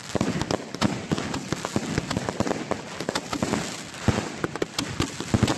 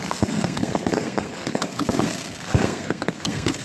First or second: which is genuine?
first